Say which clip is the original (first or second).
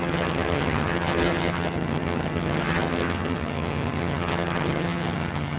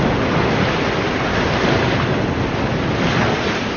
second